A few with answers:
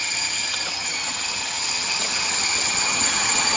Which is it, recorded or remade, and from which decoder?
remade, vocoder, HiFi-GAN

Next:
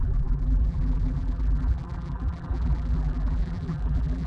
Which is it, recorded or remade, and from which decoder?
remade, vocoder, BigVGAN v2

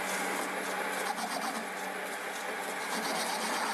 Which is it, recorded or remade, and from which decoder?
recorded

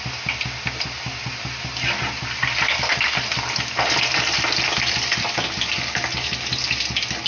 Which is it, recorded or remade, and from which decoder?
recorded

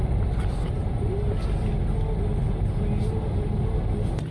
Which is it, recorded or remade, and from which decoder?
recorded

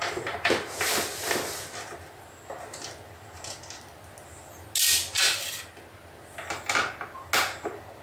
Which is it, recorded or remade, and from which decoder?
recorded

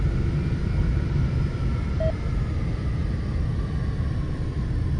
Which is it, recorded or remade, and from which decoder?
recorded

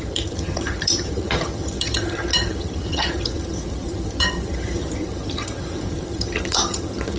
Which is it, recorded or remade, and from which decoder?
remade, vocoder, HiFi-GAN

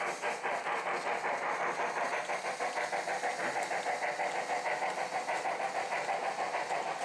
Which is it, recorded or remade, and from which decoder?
recorded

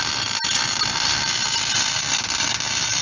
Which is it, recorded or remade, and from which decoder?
recorded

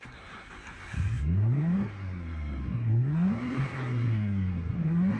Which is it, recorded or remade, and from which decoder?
remade, codec, SNAC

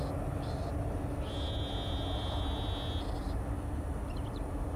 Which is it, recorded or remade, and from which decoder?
recorded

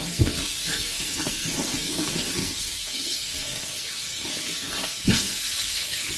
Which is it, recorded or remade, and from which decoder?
remade, codec, SNAC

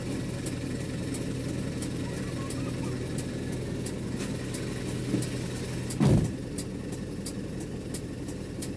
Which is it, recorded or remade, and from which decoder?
recorded